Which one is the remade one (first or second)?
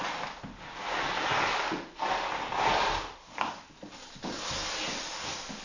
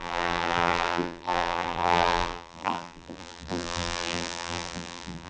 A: second